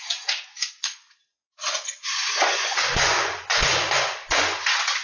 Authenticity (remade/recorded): remade